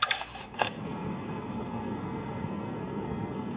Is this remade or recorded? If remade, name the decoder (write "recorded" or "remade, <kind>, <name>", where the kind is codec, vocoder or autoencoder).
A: remade, codec, SNAC